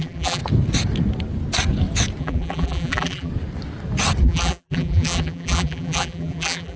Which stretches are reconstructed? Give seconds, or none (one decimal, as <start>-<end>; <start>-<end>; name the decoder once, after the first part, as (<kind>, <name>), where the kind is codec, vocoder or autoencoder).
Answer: 0.0-0.4 (vocoder, BigVGAN v2); 2.2-3.3; 4.2-6.8